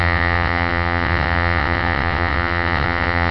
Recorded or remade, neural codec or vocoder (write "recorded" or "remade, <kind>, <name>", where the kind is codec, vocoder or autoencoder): remade, vocoder, WaveNeXt